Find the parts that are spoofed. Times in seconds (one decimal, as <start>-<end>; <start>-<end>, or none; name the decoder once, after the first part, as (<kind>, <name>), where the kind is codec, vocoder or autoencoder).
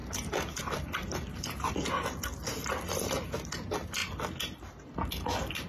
none